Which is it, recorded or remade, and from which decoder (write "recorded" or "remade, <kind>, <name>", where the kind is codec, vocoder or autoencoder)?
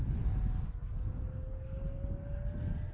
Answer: recorded